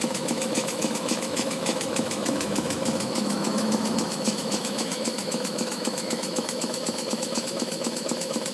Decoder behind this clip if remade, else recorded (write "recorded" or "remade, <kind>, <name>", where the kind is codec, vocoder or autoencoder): remade, autoencoder, DAC-VAE